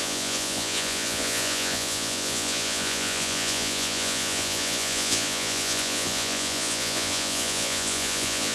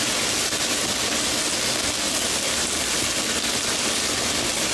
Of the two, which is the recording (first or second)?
second